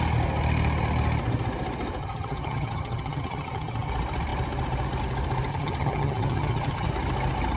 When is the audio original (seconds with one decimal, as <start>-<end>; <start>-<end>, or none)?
0.0-2.0; 3.9-5.5; 6.9-7.6